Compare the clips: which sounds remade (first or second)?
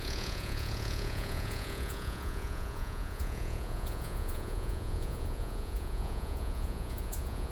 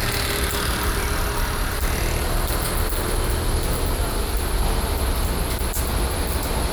first